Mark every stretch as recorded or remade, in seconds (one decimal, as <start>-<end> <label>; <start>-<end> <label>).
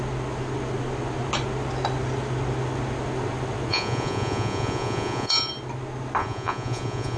0.0-3.7 recorded; 3.7-5.5 remade; 5.5-6.2 recorded; 6.2-7.2 remade